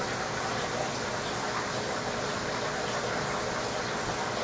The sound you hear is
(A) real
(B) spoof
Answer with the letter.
A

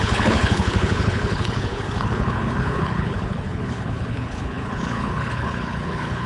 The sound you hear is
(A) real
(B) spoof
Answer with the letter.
B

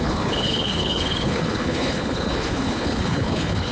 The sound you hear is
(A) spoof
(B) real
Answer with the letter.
A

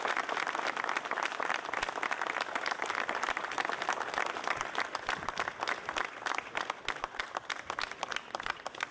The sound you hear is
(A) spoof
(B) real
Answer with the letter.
B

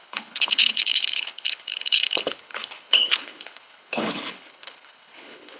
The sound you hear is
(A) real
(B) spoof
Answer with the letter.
B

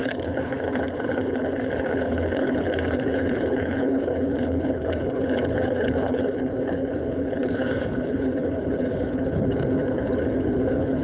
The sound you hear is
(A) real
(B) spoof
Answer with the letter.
B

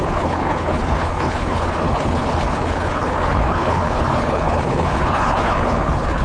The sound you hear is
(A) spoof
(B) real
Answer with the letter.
A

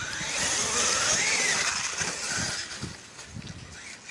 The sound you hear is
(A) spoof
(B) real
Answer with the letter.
B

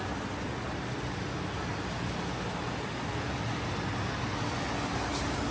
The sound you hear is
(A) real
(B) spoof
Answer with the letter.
A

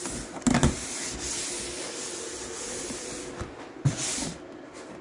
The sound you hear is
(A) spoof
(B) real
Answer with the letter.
B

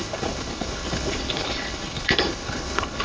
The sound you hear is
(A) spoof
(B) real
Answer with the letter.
A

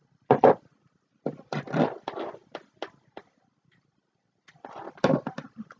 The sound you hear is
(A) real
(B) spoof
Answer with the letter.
A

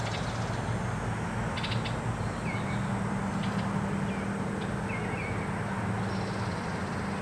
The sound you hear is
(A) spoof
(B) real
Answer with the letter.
B